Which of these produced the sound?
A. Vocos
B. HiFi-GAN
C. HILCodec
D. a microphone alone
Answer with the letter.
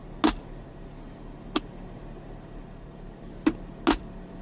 D